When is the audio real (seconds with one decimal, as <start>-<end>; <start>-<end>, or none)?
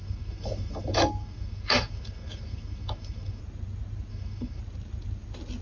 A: 3.4-4.1; 4.6-5.6